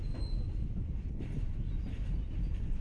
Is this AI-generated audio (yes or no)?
no